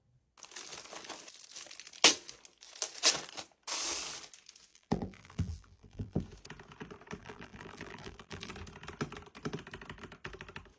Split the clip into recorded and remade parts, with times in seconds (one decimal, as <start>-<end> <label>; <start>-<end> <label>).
0.0-4.7 recorded; 4.7-6.2 remade; 6.2-7.2 recorded; 7.2-8.5 remade; 8.5-10.8 recorded